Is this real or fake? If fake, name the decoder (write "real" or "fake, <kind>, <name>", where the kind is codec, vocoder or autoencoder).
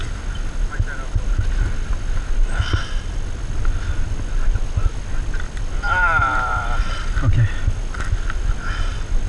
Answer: real